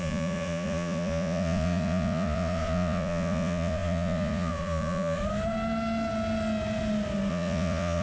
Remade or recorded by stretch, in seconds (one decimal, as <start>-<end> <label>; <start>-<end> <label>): 0.0-5.2 remade; 5.2-7.3 recorded; 7.3-8.0 remade